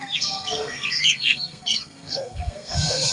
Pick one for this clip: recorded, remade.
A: remade